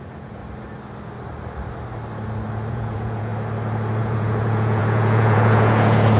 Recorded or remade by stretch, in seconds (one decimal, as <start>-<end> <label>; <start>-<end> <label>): 0.0-0.4 remade; 0.4-2.7 recorded; 2.7-3.3 remade; 3.3-4.0 recorded; 4.0-6.2 remade